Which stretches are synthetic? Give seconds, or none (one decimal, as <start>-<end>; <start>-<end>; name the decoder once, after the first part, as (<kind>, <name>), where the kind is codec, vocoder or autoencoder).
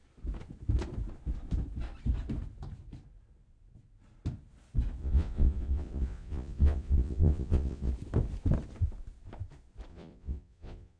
5.0-7.9 (vocoder, Vocos); 9.9-11.0